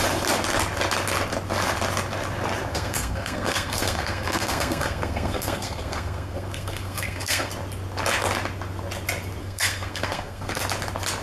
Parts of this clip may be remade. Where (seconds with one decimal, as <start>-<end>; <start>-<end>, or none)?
2.7-7.5; 9.4-10.6